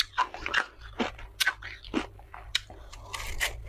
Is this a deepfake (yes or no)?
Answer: no